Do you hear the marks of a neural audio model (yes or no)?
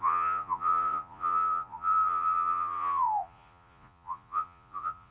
yes